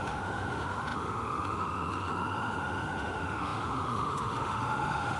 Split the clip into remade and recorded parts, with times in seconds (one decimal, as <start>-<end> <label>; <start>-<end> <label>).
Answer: 0.0-5.2 remade